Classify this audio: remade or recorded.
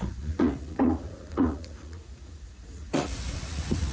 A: remade